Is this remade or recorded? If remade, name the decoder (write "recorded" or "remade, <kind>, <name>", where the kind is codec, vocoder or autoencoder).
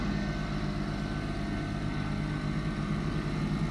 recorded